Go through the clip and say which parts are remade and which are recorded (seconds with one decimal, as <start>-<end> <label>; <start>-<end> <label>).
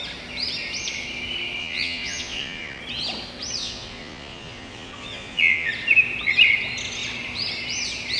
0.0-1.6 recorded; 1.6-2.8 remade; 2.8-3.6 recorded; 3.6-5.7 remade; 5.7-8.2 recorded